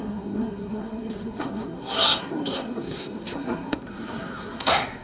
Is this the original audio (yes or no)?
no